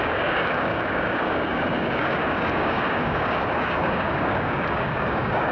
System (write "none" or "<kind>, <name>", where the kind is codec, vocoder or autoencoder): codec, DAC